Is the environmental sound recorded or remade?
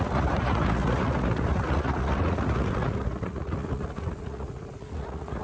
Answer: remade